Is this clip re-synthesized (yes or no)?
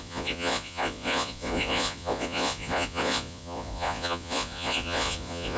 yes